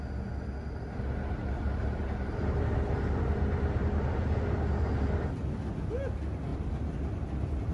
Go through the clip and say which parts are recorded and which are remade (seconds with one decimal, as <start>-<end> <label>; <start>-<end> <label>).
0.0-1.8 recorded; 1.8-3.0 remade; 3.0-6.5 recorded; 6.5-7.7 remade